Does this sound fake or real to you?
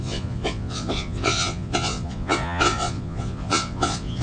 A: fake